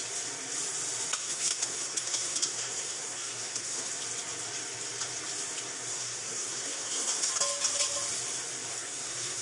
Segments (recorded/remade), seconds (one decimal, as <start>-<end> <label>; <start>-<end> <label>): 0.0-1.2 recorded; 1.2-3.9 remade; 3.9-5.9 recorded; 5.9-7.3 remade; 7.3-8.7 recorded; 8.7-9.4 remade